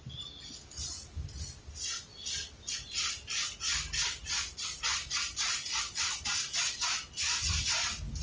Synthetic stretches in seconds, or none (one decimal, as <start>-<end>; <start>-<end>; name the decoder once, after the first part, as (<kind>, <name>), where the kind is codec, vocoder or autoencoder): none